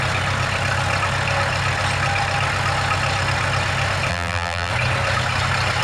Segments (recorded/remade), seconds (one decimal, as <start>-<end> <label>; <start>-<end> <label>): 0.0-4.1 recorded; 4.1-4.7 remade; 4.7-5.8 recorded